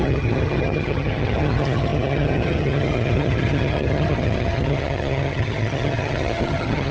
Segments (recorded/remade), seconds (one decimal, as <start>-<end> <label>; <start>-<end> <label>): 0.0-6.9 remade